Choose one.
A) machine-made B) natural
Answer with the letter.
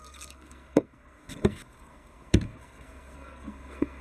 A